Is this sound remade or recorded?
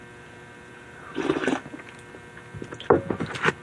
recorded